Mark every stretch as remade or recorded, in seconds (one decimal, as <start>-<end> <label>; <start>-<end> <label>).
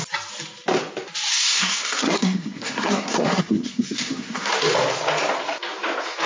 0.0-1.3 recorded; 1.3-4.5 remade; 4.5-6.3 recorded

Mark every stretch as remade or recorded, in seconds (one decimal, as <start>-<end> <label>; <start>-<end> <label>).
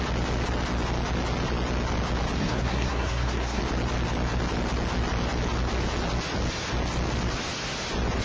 0.0-2.4 recorded; 2.4-3.6 remade; 3.6-8.2 recorded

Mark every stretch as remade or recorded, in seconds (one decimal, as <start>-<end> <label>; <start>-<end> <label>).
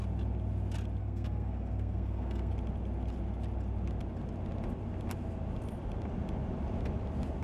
0.0-1.0 recorded; 1.0-2.5 remade; 2.5-7.4 recorded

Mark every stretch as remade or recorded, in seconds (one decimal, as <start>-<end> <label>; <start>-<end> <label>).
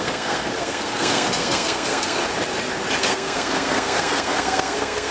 0.0-2.2 remade; 2.2-3.0 recorded; 3.0-5.1 remade